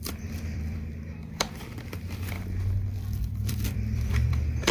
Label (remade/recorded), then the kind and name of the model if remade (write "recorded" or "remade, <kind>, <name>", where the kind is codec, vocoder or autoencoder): remade, vocoder, BigVGAN v2